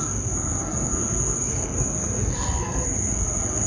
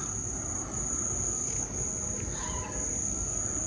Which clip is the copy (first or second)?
first